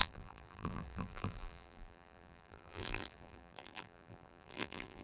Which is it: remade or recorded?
remade